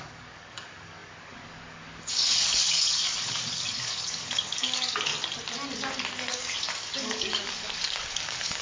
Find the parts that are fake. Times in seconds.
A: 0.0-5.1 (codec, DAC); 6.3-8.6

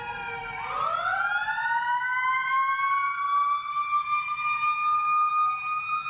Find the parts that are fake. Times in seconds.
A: none

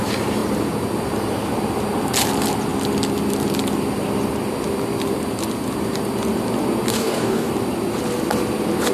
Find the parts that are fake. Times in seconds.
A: 6.9-7.5 (codec, DAC)

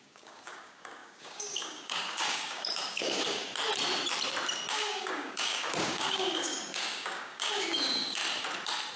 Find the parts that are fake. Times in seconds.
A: 0.0-3.5 (codec, DAC); 4.7-8.2

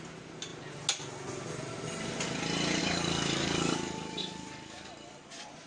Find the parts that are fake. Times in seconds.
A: 2.8-4.9 (codec, DAC)